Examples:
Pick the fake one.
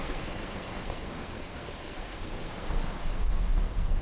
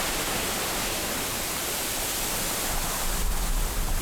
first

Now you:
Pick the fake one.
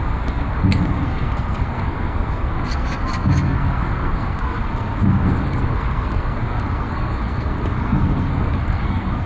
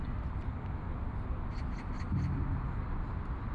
first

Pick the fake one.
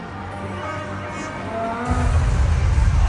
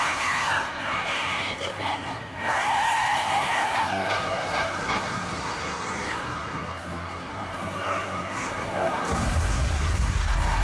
second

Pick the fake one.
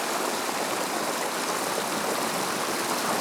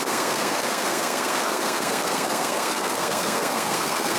second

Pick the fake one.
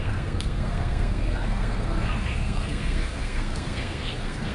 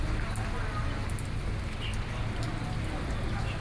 first